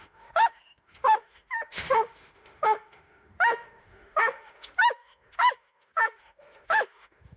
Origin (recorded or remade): remade